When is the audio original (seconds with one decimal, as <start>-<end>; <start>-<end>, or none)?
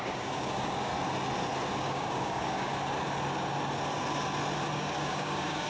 0.9-1.7; 2.7-4.7